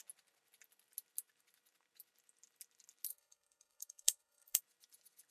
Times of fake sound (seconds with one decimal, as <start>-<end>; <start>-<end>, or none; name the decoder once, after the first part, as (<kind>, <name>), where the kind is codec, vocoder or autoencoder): 3.1-4.6 (codec, SNAC)